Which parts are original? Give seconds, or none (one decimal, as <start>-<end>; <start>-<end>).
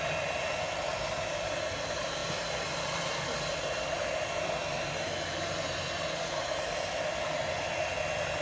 0.0-8.4